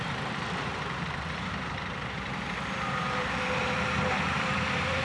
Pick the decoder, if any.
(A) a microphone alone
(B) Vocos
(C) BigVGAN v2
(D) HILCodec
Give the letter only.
C